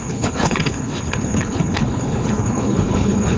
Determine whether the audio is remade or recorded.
remade